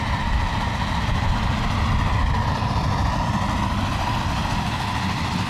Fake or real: real